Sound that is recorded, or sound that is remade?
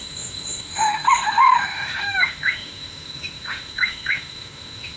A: remade